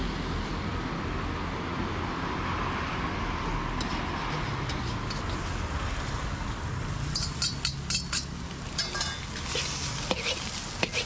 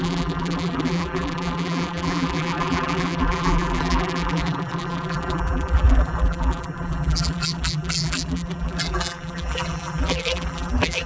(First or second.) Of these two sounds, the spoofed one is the second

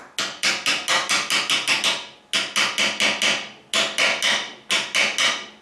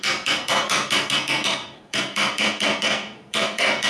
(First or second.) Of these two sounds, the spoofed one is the second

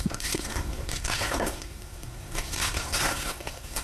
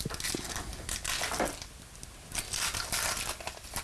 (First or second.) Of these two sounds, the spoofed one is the first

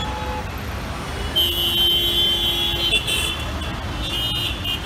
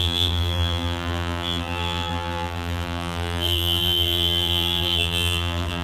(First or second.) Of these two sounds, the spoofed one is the second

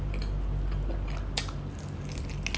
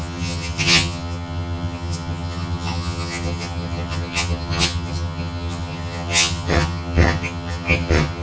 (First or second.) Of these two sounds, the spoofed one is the second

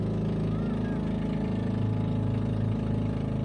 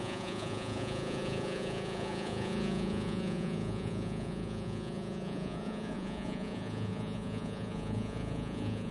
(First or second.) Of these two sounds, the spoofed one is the second